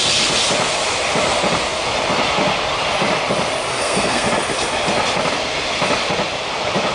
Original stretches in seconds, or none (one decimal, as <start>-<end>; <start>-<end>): 0.0-3.7; 4.3-6.9